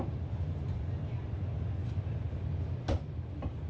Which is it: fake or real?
real